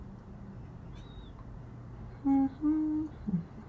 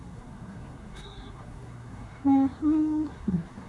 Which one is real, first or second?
first